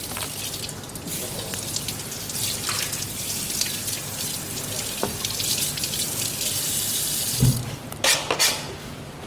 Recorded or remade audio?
recorded